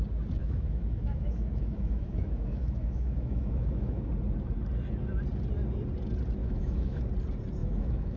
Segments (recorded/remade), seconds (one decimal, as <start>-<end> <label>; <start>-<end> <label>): 0.0-0.4 recorded; 0.4-4.1 remade; 4.1-6.4 recorded; 6.4-7.0 remade; 7.0-7.6 recorded; 7.6-8.2 remade